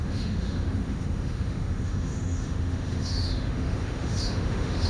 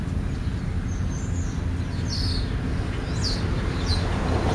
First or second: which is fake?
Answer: first